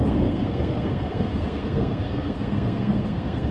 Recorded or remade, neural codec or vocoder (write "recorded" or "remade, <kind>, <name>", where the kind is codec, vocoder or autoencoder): remade, codec, SNAC